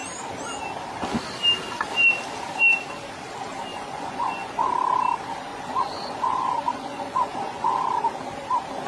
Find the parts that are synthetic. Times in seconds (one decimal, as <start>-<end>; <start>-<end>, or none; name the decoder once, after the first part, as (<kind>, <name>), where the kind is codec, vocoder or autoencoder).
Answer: 3.7-4.7 (vocoder, Vocos); 5.5-7.8